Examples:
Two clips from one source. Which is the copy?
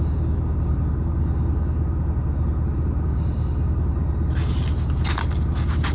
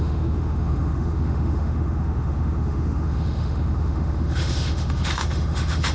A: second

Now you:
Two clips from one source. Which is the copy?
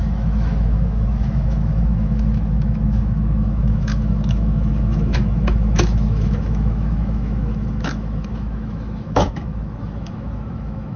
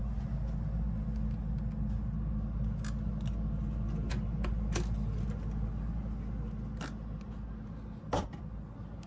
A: first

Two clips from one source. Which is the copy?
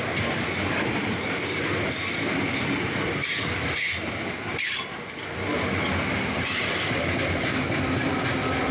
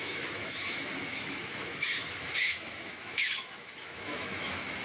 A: second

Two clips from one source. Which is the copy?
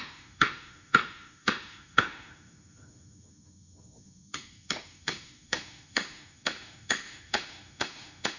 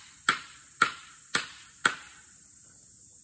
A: first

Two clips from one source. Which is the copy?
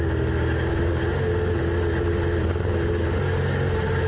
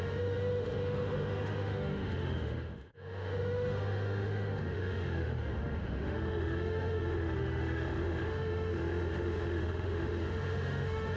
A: second